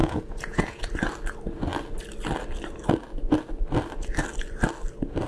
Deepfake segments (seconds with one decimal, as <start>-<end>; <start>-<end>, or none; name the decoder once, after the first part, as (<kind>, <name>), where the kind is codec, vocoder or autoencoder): 0.0-0.9 (vocoder, Vocos)